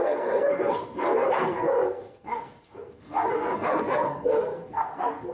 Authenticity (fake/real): fake